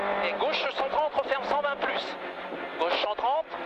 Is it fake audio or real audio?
real